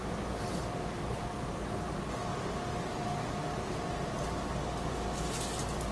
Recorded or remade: recorded